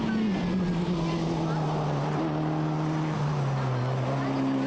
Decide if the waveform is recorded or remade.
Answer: recorded